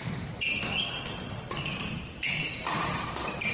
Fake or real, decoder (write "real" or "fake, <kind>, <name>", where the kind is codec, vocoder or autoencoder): fake, vocoder, BigVGAN v2